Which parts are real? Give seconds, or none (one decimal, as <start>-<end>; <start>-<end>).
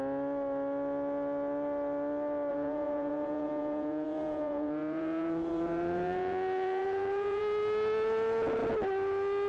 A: 0.0-2.5; 7.4-9.5